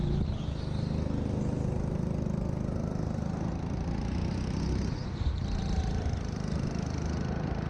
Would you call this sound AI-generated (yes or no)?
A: no